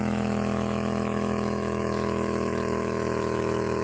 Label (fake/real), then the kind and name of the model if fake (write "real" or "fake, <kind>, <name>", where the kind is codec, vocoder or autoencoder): fake, autoencoder, DAC-VAE